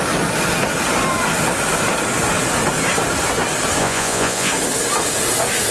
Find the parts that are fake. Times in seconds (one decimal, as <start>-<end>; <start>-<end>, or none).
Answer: 3.8-4.5